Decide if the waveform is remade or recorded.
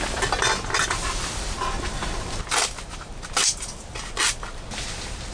recorded